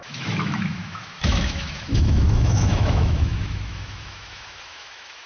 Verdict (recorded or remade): remade